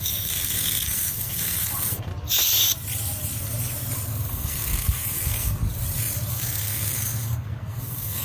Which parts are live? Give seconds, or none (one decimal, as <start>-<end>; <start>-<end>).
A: 2.1-4.3; 5.6-6.3